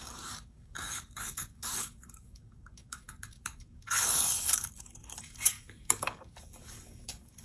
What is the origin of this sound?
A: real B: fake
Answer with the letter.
B